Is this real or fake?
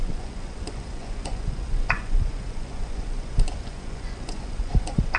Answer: fake